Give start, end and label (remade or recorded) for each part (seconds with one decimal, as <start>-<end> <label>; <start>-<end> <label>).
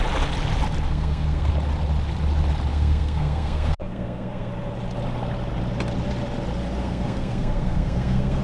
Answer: 0.0-0.9 recorded; 0.9-1.5 remade; 1.5-2.7 recorded; 2.7-4.5 remade; 4.5-6.8 recorded; 6.8-8.4 remade